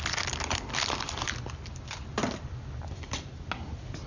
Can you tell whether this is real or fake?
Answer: real